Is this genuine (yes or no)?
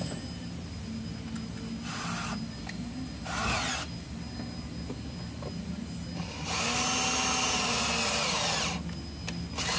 yes